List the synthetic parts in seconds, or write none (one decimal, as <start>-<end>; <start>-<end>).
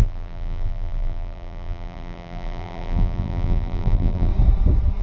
0.0-4.3